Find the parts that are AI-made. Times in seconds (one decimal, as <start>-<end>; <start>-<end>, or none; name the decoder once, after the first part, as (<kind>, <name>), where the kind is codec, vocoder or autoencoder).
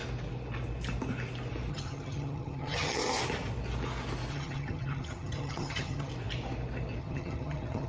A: 1.7-3.0 (vocoder, HiFi-GAN); 4.3-6.1; 7.0-7.9